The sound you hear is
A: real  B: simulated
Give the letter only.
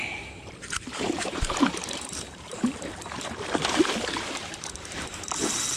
B